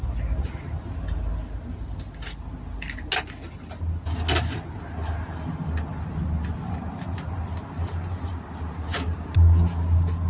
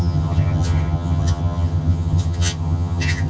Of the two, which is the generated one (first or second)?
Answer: second